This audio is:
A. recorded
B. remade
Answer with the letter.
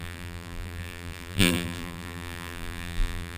B